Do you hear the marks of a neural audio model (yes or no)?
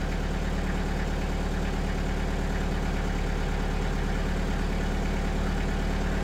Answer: no